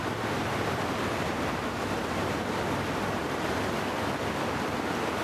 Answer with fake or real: real